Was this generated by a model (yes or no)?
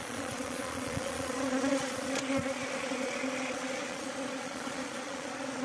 yes